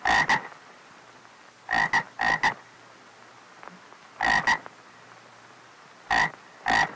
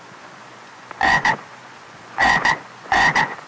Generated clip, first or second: second